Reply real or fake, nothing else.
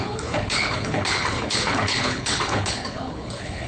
fake